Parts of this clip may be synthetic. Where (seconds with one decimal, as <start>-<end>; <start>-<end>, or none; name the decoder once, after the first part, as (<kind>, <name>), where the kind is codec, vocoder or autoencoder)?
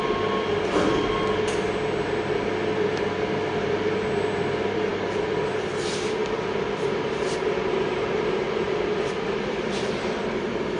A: none